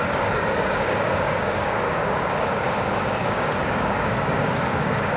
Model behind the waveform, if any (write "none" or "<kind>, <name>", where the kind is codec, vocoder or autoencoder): codec, DAC